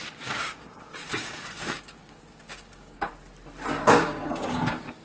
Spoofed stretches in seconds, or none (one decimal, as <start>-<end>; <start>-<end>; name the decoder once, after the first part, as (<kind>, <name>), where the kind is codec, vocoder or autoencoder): 0.0-3.1 (codec, DAC); 3.9-5.0